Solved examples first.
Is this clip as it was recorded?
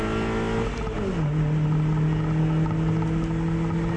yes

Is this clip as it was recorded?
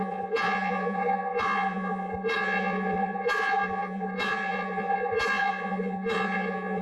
no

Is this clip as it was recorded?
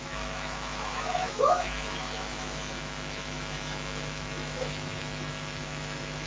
no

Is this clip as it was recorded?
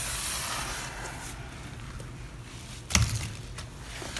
yes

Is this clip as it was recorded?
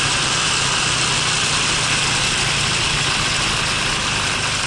yes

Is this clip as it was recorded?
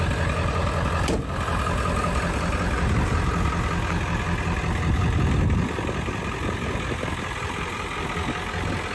yes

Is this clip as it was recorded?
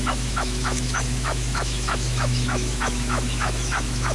no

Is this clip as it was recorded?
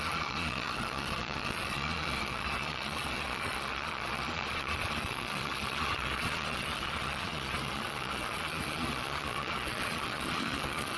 no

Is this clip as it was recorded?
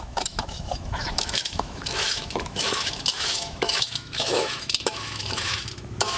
no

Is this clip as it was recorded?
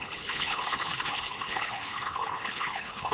no